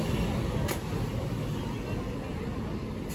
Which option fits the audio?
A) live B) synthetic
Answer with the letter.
A